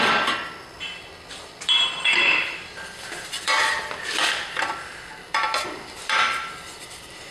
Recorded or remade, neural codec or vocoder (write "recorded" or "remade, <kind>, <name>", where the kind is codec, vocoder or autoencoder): remade, vocoder, BigVGAN v2